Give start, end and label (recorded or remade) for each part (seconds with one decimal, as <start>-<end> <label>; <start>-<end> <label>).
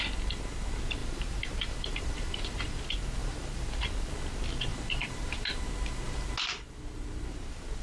0.0-1.0 recorded; 1.0-2.8 remade; 2.8-3.2 recorded; 3.2-3.9 remade; 3.9-4.7 recorded; 4.7-5.6 remade; 5.6-7.8 recorded